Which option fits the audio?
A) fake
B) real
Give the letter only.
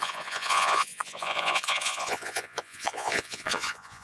A